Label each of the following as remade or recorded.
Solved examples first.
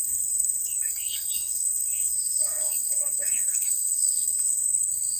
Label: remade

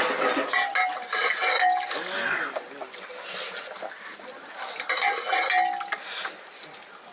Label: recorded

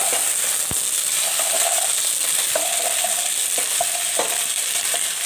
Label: recorded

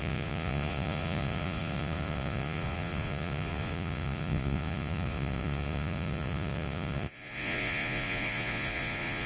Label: remade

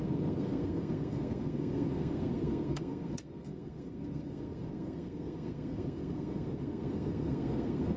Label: remade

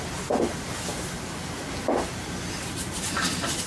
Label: recorded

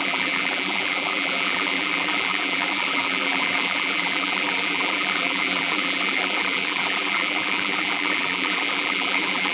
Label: remade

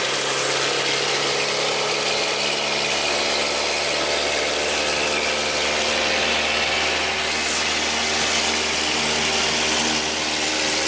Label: recorded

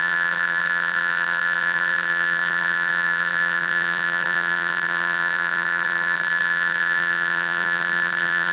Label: remade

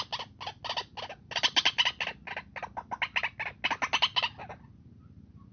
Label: recorded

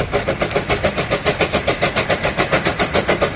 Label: recorded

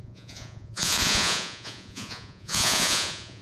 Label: remade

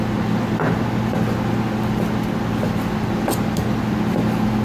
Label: recorded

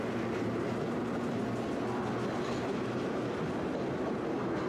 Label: recorded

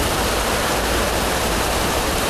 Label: recorded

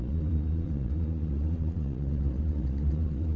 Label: remade